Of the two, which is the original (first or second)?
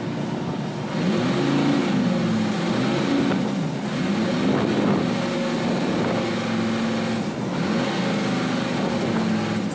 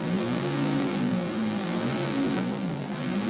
first